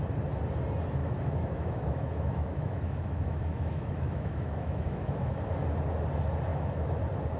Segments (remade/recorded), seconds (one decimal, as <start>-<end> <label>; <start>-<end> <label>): 0.0-1.0 recorded; 1.0-5.4 remade; 5.4-6.5 recorded; 6.5-7.0 remade; 7.0-7.4 recorded